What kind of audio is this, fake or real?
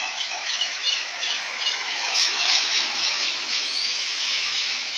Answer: fake